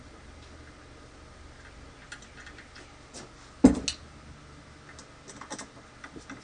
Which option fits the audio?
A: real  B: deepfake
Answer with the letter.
A